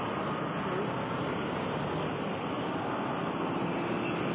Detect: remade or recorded recorded